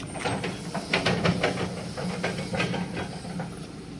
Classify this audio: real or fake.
real